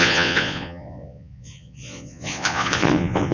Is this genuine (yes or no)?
no